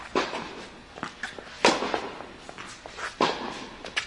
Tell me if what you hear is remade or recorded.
recorded